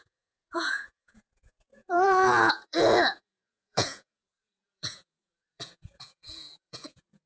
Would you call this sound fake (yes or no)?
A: yes